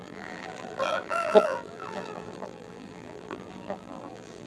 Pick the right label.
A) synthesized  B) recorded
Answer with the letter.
A